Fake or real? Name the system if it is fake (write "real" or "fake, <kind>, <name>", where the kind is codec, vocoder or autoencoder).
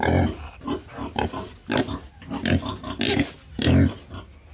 real